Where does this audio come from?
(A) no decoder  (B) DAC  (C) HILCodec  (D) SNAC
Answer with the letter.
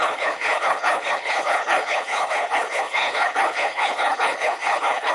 C